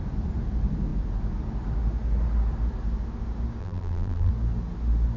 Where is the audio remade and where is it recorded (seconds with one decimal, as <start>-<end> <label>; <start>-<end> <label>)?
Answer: 0.0-3.6 recorded; 3.6-4.3 remade; 4.3-5.2 recorded